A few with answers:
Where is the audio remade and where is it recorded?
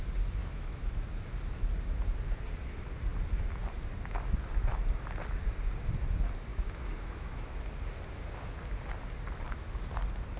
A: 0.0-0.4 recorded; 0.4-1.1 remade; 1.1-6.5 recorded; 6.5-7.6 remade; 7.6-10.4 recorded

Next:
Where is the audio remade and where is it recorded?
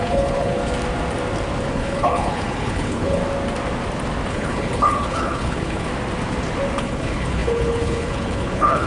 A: 0.0-0.6 remade; 0.6-1.7 recorded; 1.7-3.2 remade; 3.2-4.3 recorded; 4.3-5.9 remade; 5.9-6.8 recorded; 6.8-8.9 remade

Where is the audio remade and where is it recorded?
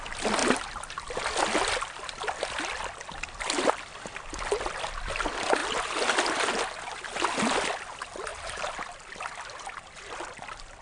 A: 0.0-10.8 recorded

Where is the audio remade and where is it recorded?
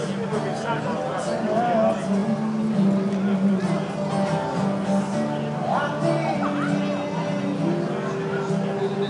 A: 0.0-9.1 recorded